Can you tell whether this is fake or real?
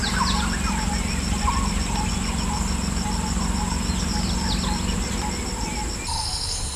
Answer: real